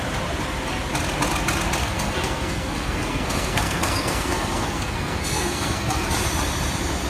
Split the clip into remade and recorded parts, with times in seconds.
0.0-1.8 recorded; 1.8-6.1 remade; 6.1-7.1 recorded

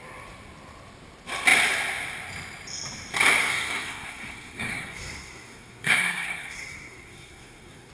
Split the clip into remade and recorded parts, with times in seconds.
0.0-3.4 recorded; 3.4-7.9 remade

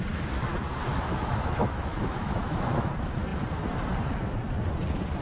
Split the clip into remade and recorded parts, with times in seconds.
0.0-0.9 recorded; 0.9-2.9 remade; 2.9-5.2 recorded